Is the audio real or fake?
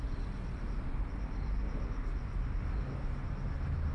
real